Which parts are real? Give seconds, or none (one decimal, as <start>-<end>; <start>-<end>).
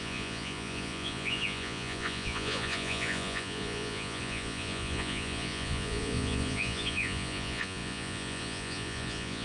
none